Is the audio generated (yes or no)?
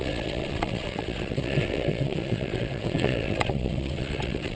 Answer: yes